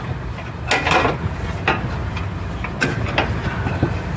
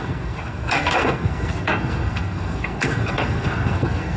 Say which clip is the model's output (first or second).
second